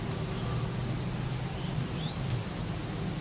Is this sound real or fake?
real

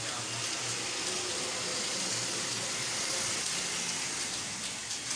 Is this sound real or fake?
real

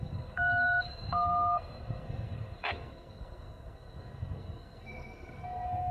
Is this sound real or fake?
fake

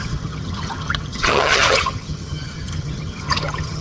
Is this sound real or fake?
fake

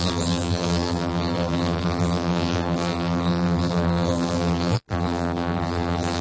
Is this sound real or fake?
fake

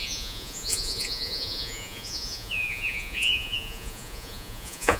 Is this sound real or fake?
fake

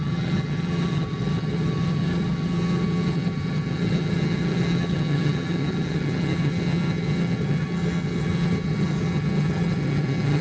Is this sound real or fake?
fake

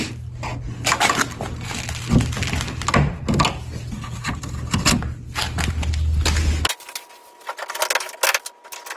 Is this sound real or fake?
real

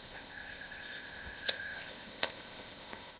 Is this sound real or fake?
fake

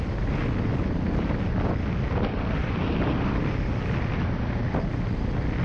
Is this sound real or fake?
real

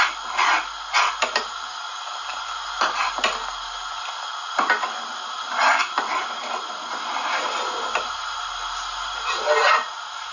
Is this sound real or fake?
real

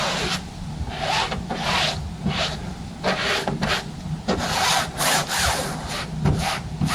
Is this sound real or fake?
real